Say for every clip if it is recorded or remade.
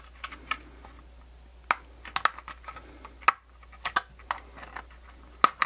recorded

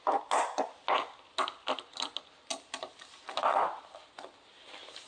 recorded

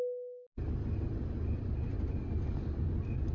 recorded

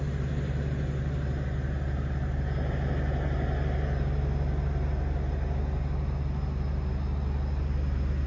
recorded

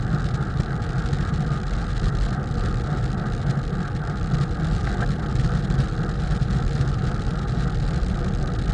recorded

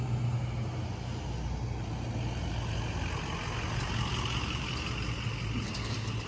recorded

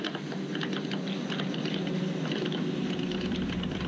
recorded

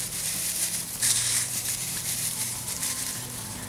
remade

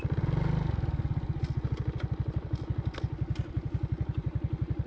recorded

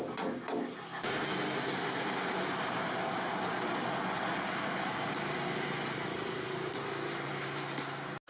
recorded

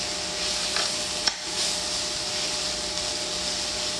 recorded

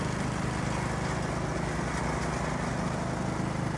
recorded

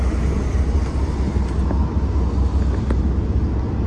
recorded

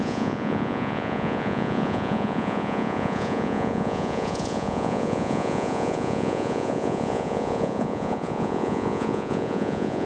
remade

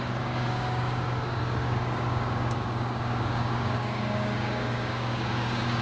remade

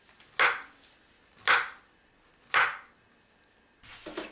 recorded